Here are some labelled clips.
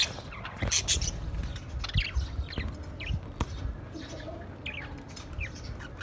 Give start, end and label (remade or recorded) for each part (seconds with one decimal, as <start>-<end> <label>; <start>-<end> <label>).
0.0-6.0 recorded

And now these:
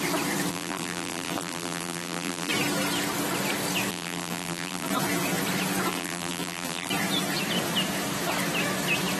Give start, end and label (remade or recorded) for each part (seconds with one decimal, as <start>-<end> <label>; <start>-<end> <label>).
0.0-0.5 recorded; 0.5-2.5 remade; 2.5-3.9 recorded; 3.9-4.9 remade; 4.9-5.9 recorded; 5.9-6.9 remade; 6.9-9.2 recorded

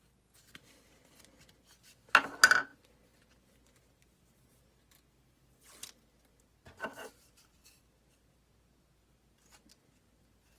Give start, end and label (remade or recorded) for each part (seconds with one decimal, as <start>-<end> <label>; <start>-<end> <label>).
0.0-10.6 recorded